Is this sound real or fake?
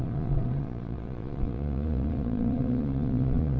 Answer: fake